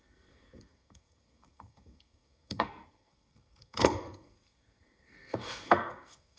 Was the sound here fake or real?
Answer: fake